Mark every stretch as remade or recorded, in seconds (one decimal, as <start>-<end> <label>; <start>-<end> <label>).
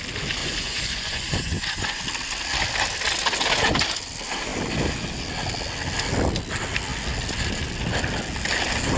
0.0-0.4 recorded; 0.4-2.0 remade; 2.0-9.0 recorded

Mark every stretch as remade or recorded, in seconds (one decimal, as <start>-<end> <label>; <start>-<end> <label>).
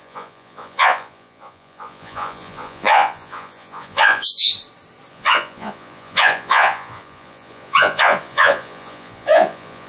0.0-4.5 remade; 4.5-5.1 recorded; 5.1-9.9 remade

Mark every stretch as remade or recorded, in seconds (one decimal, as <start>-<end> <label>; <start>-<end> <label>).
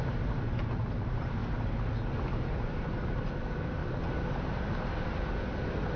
0.0-1.4 remade; 1.4-2.3 recorded; 2.3-3.8 remade; 3.8-6.0 recorded